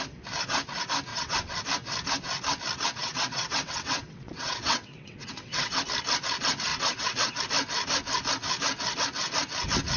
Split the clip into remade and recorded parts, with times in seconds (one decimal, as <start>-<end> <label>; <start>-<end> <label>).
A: 0.0-1.1 recorded; 1.1-1.6 remade; 1.6-3.0 recorded; 3.0-5.8 remade; 5.8-6.7 recorded; 6.7-7.4 remade; 7.4-10.0 recorded